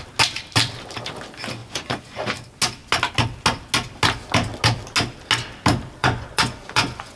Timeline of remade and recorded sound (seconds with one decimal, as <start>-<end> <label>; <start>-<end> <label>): 0.0-1.6 recorded; 1.6-2.2 remade; 2.2-6.0 recorded; 6.0-7.2 remade